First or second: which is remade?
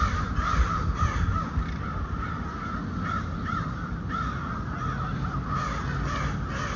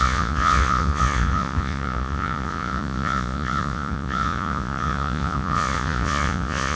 second